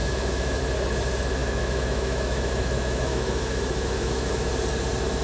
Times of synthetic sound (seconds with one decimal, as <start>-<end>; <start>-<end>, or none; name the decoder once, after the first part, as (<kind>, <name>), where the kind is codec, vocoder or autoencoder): 0.0-0.6 (autoencoder, DAC-VAE); 1.4-4.5